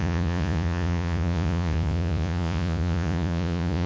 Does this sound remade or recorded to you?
remade